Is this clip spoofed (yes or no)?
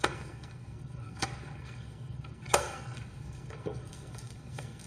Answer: yes